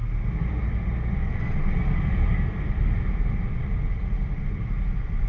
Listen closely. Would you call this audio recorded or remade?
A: recorded